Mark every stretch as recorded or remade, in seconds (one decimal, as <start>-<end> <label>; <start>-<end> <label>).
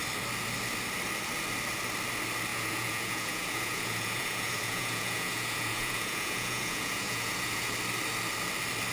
0.0-2.5 recorded; 2.5-7.7 remade; 7.7-8.9 recorded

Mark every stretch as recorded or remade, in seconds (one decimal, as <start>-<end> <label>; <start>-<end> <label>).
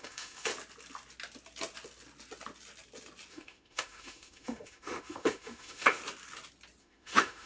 0.0-0.5 remade; 0.5-3.3 recorded; 3.3-6.0 remade; 6.0-6.8 recorded; 6.8-7.5 remade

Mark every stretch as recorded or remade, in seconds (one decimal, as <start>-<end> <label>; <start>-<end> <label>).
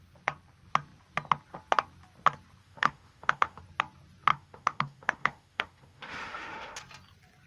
0.0-2.6 recorded; 2.6-3.6 remade; 3.6-4.3 recorded; 4.3-6.8 remade; 6.8-7.5 recorded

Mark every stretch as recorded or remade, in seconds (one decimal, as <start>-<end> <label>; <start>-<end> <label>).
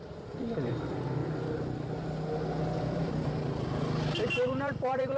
0.0-1.2 remade; 1.2-2.8 recorded; 2.8-5.2 remade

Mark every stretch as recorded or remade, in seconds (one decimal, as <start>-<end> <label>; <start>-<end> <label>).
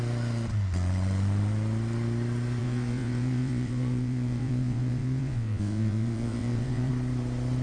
0.0-2.6 recorded; 2.6-6.9 remade; 6.9-7.6 recorded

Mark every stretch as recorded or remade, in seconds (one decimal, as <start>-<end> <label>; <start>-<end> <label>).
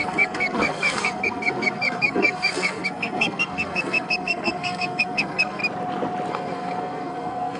0.0-5.6 remade; 5.6-6.3 recorded; 6.3-7.6 remade